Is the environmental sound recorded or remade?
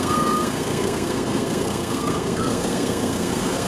remade